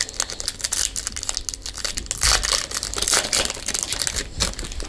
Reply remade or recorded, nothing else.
recorded